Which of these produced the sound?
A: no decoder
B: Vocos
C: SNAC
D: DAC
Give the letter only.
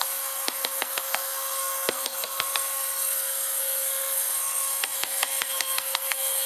C